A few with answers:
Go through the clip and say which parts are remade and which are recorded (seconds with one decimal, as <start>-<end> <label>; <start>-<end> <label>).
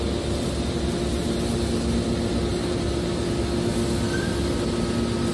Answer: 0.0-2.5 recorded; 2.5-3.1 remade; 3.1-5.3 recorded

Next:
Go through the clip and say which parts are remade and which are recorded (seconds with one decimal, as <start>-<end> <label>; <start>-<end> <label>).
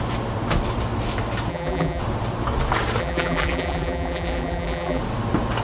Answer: 0.0-1.5 recorded; 1.5-2.0 remade; 2.0-3.0 recorded; 3.0-5.0 remade; 5.0-5.6 recorded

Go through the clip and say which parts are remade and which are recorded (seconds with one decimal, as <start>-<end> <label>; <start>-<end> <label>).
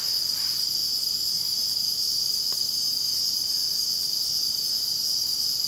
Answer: 0.0-5.7 recorded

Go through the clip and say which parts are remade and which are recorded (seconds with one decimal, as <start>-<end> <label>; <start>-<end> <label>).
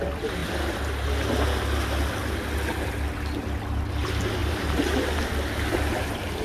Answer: 0.0-4.4 recorded; 4.4-5.2 remade; 5.2-6.4 recorded